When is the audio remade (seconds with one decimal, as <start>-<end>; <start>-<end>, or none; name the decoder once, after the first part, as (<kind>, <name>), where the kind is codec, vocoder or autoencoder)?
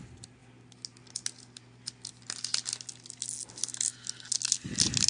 none